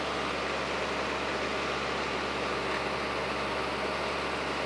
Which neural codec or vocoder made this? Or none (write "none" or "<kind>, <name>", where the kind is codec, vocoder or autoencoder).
none